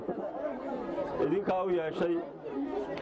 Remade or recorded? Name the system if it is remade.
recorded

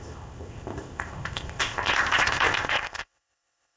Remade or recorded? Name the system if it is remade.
remade, codec, ZipCodec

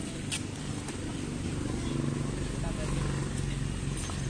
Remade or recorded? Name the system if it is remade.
recorded